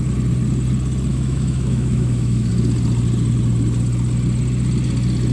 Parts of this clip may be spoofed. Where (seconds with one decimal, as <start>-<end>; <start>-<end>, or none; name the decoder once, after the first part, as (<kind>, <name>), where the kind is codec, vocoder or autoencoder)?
1.1-2.5 (autoencoder, DAC-VAE)